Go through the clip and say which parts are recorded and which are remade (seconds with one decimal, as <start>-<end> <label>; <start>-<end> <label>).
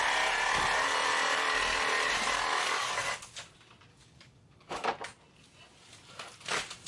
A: 0.0-2.5 recorded; 2.5-3.0 remade; 3.0-3.9 recorded; 3.9-4.9 remade; 4.9-6.9 recorded